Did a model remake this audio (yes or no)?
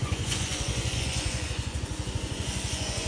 yes